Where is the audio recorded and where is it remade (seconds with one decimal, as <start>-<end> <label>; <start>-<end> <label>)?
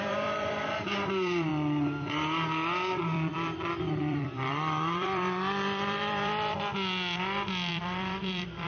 0.0-1.5 remade; 1.5-3.0 recorded; 3.0-6.7 remade; 6.7-7.7 recorded; 7.7-8.7 remade